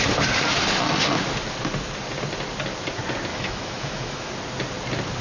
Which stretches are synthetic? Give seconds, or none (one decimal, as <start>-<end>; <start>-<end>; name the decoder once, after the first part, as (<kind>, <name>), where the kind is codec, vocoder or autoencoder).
3.3-4.3 (autoencoder, DAC-VAE)